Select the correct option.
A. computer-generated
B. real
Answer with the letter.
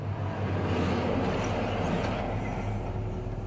B